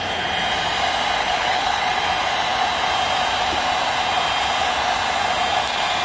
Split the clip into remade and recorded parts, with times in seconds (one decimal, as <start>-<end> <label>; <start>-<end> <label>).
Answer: 0.0-1.2 recorded; 1.2-1.8 remade; 1.8-6.0 recorded